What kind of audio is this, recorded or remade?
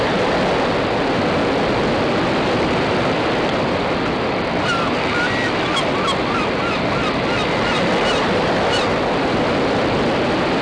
recorded